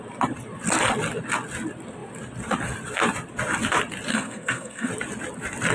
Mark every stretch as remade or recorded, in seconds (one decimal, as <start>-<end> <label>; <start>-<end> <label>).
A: 0.0-4.1 recorded; 4.1-4.9 remade; 4.9-5.7 recorded